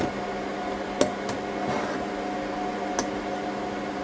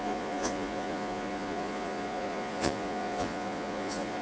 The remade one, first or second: second